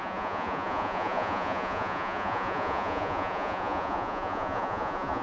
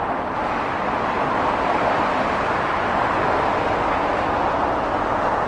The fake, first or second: first